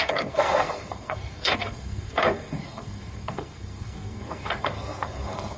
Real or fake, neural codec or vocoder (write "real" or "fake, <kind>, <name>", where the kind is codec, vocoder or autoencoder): fake, codec, SNAC